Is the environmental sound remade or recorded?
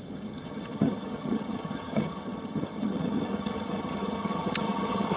remade